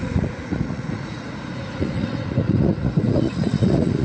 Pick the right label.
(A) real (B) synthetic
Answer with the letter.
B